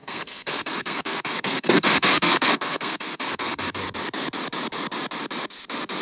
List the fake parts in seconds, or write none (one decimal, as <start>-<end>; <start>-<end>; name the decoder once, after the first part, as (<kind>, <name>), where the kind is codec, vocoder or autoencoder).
0.0-3.6 (codec, SNAC)